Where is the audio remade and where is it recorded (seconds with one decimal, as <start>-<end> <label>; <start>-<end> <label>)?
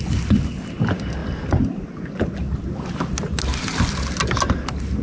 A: 0.0-5.0 recorded